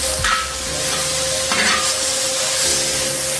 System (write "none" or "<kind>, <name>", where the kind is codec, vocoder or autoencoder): none